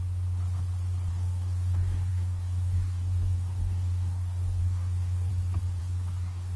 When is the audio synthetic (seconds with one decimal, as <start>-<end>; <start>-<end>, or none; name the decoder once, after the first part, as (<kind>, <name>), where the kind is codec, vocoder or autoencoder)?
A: 1.1-5.3 (codec, DAC); 5.8-6.6